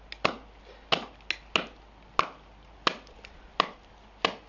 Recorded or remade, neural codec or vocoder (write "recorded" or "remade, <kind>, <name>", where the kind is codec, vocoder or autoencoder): recorded